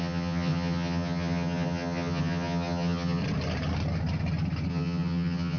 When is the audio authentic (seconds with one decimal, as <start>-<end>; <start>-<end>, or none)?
3.2-4.7